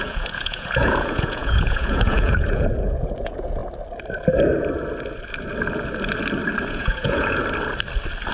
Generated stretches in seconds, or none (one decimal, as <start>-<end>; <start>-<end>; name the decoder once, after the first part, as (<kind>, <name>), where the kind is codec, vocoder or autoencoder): 0.0-3.6 (vocoder, Vocos); 6.7-7.4